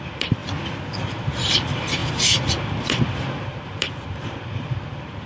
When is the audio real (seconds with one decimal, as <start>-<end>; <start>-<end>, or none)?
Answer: 0.4-1.0